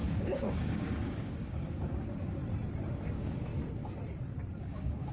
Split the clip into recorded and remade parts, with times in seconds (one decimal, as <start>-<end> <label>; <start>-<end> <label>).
0.0-2.4 remade; 2.4-3.1 recorded; 3.1-3.5 remade; 3.5-4.6 recorded; 4.6-5.1 remade